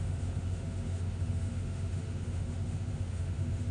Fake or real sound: fake